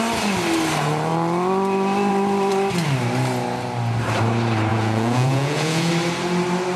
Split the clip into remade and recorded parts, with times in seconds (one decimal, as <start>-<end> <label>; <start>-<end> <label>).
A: 0.0-4.7 recorded; 4.7-5.9 remade; 5.9-6.8 recorded